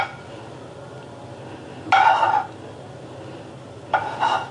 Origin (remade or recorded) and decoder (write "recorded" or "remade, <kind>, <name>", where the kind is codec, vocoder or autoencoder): recorded